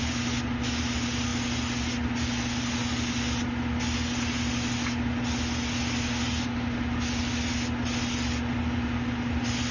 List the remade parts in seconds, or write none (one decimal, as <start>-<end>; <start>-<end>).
none